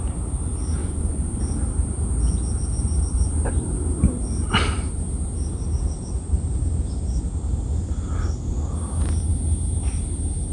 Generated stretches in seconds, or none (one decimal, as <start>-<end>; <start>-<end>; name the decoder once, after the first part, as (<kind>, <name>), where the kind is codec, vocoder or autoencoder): 0.8-1.4 (vocoder, Vocos)

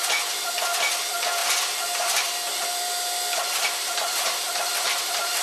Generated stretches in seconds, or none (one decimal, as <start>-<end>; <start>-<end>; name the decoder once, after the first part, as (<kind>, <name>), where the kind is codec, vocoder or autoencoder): 1.4-4.3 (vocoder, BigVGAN v2)